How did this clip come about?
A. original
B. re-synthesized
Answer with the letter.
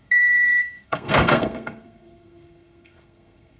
B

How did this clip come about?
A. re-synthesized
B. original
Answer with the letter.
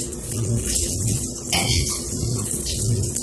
A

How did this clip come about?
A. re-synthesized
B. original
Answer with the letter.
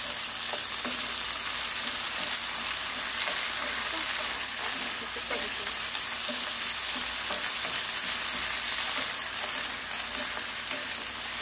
B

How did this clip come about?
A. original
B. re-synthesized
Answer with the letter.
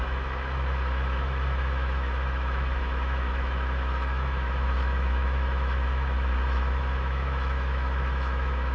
B